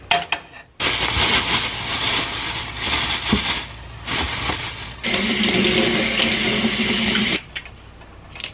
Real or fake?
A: real